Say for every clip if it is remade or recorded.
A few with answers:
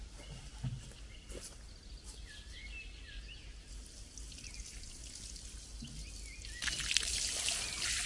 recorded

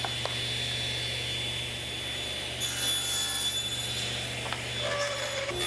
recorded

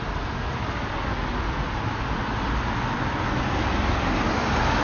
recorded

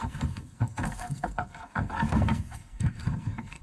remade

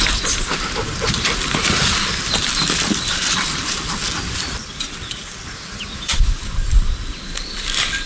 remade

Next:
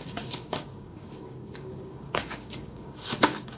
remade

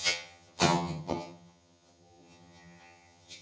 remade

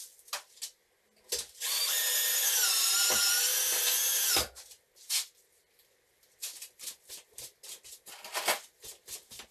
recorded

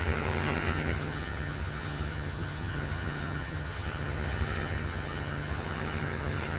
remade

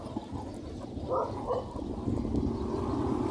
recorded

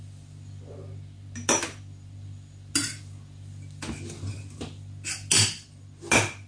recorded